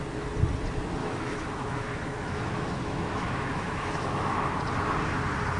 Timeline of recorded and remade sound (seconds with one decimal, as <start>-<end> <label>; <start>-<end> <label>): 0.0-1.0 recorded; 1.0-4.4 remade; 4.4-5.6 recorded